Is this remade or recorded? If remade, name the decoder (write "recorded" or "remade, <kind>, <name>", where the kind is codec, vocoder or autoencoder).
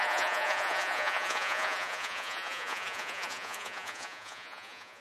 remade, vocoder, Vocos